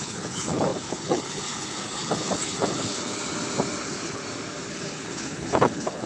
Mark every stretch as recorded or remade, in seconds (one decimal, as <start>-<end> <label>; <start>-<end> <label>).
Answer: 0.0-3.2 remade; 3.2-3.8 recorded; 3.8-4.2 remade; 4.2-4.7 recorded; 4.7-6.1 remade